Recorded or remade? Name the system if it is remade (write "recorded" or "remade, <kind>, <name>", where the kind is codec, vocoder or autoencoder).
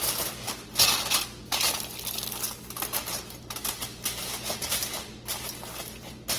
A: recorded